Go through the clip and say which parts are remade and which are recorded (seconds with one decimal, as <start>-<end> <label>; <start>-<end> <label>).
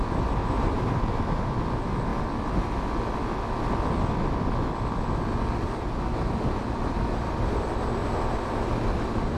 0.0-0.4 recorded; 0.4-1.5 remade; 1.5-8.0 recorded; 8.0-8.6 remade; 8.6-9.4 recorded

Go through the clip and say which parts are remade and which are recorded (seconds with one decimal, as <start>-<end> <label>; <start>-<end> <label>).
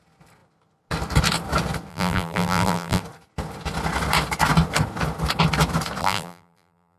0.0-1.9 recorded; 1.9-3.0 remade; 3.0-6.0 recorded; 6.0-7.0 remade